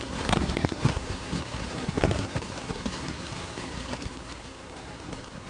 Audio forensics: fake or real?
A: fake